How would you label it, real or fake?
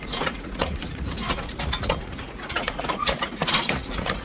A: fake